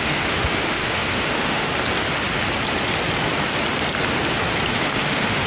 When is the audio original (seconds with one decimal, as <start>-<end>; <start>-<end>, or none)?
1.7-4.7